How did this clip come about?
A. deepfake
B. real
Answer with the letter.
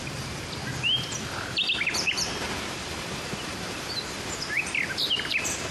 A